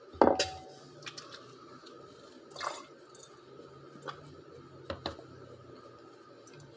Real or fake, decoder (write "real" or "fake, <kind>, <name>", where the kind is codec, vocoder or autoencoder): real